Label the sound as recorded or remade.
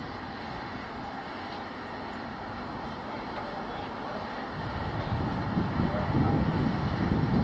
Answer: recorded